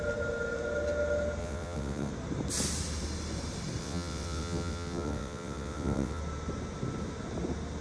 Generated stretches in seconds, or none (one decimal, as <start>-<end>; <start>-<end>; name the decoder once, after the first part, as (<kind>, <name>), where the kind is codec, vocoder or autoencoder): 1.4-2.1 (vocoder, WaveNeXt); 3.8-6.2